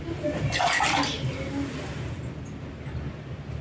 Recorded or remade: recorded